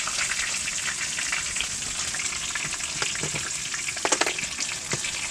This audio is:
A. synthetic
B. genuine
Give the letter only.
B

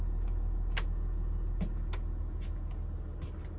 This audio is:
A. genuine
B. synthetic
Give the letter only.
A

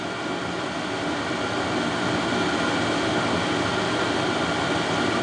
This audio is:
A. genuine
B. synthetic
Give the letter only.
A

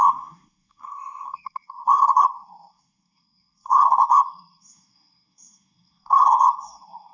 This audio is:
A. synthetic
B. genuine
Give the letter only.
A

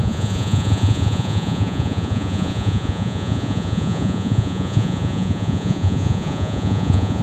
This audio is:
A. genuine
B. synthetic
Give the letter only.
B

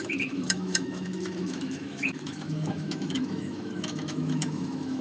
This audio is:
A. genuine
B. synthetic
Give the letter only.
B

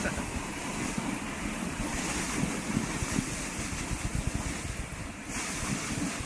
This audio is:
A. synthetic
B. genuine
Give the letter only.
B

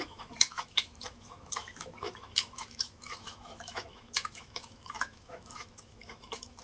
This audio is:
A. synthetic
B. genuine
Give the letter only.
A